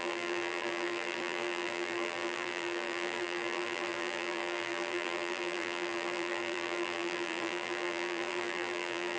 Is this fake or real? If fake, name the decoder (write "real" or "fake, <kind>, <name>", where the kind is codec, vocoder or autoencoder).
fake, vocoder, BigVGAN v2